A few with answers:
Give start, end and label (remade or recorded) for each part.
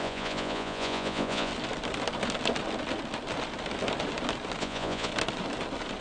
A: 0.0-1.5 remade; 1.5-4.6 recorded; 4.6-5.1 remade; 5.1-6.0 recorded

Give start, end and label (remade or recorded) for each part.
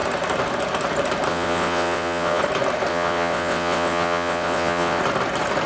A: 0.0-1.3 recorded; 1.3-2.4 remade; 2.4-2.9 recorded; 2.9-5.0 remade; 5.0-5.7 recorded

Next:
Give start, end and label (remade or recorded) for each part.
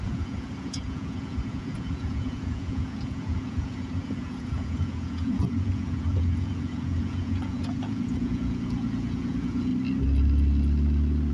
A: 0.0-9.7 remade; 9.7-11.3 recorded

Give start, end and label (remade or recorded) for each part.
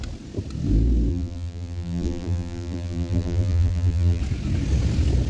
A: 0.0-1.1 recorded; 1.1-4.2 remade; 4.2-5.3 recorded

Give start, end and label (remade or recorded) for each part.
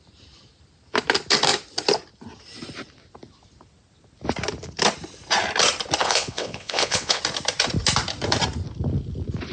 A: 0.0-6.0 recorded; 6.0-7.2 remade; 7.2-9.5 recorded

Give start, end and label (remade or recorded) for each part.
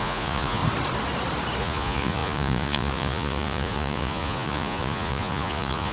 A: 0.0-0.6 remade; 0.6-1.6 recorded; 1.6-5.9 remade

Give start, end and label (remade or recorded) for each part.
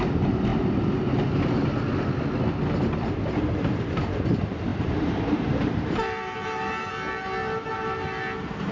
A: 0.0-4.7 recorded; 4.7-6.9 remade; 6.9-8.7 recorded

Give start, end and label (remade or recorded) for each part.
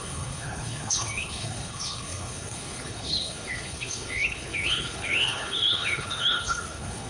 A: 0.0-7.1 remade